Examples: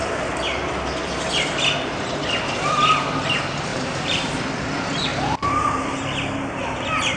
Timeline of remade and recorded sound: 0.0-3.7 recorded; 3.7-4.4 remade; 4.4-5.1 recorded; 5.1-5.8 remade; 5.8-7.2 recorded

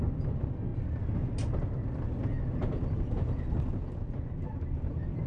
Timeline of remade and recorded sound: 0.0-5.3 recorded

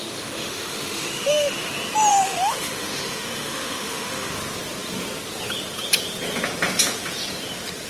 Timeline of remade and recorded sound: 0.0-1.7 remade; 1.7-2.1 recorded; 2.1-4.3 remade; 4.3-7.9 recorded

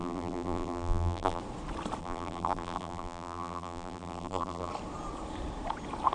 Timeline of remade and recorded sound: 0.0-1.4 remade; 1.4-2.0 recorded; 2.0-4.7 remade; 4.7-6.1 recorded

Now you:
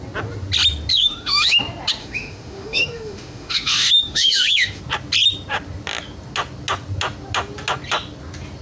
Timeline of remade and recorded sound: 0.0-0.9 recorded; 0.9-1.6 remade; 1.6-2.0 recorded; 2.0-4.8 remade; 4.8-8.6 recorded

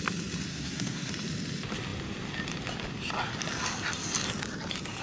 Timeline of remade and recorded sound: 0.0-0.5 recorded; 0.5-1.1 remade; 1.1-5.0 recorded

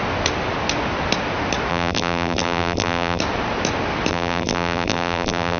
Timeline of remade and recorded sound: 0.0-1.7 recorded; 1.7-3.2 remade; 3.2-4.1 recorded; 4.1-5.6 remade

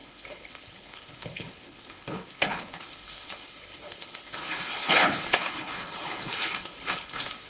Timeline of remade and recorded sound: 0.0-7.5 remade